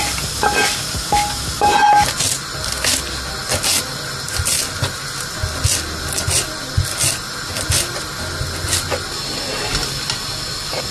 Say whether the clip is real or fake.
real